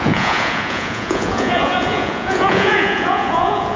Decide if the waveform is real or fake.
fake